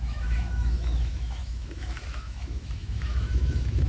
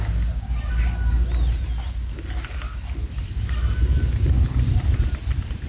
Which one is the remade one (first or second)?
first